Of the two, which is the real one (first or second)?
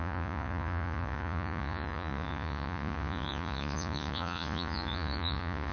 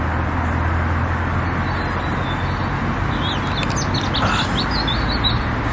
second